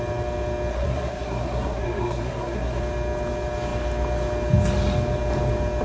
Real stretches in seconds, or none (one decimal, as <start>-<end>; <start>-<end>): 0.0-0.7; 2.8-5.8